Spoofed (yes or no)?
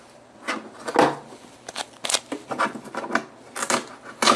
no